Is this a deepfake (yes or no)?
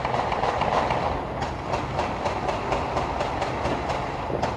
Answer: no